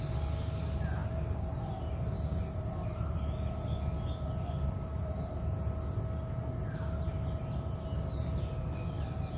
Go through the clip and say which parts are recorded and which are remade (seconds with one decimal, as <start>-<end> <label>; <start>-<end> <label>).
0.0-9.4 recorded